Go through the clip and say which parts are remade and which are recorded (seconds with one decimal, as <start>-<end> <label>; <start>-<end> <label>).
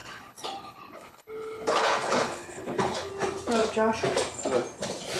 0.0-3.1 remade; 3.1-5.2 recorded